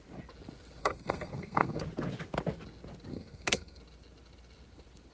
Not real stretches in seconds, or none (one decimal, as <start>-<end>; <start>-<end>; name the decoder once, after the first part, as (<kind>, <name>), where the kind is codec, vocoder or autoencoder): 0.8-1.8 (codec, SNAC); 3.1-3.8